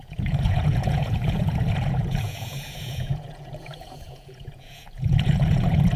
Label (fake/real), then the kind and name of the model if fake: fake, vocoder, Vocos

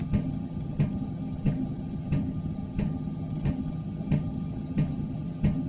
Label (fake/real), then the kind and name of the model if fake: fake, vocoder, HiFi-GAN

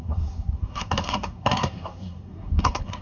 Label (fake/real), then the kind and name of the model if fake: fake, codec, SNAC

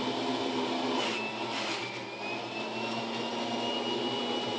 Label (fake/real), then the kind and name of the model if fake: real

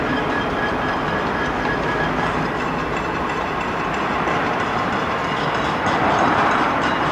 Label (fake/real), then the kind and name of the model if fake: fake, vocoder, BigVGAN v2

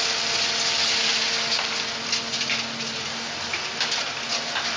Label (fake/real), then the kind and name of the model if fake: real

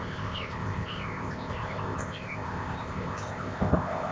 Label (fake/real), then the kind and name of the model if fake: fake, codec, ZipCodec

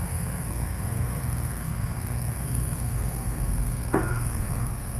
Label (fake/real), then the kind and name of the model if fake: fake, codec, SNAC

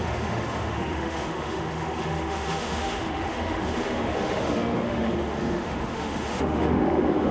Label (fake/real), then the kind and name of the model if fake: fake, autoencoder, DAC-VAE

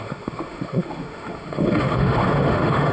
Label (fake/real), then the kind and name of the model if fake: fake, autoencoder, DAC-VAE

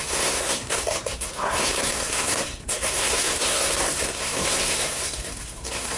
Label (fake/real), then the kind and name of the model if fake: fake, codec, SNAC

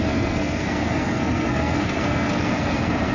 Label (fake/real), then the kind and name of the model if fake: fake, codec, SNAC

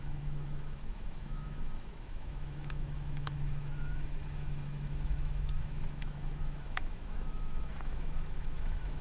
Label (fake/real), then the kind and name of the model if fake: fake, autoencoder, DAC-VAE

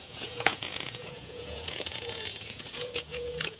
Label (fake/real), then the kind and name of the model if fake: fake, vocoder, Vocos